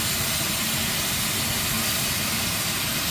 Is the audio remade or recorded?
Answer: recorded